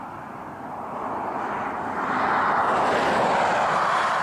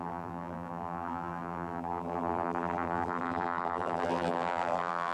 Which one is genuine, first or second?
first